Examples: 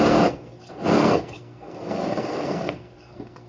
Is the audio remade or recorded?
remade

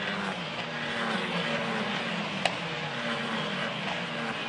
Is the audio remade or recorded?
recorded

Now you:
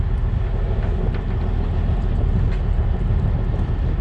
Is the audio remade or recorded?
recorded